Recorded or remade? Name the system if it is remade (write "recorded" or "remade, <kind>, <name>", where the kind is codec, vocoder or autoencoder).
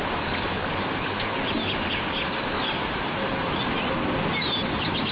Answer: recorded